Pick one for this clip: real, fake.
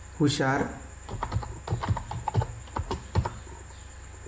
real